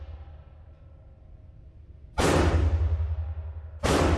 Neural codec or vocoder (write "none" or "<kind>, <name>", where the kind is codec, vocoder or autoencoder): none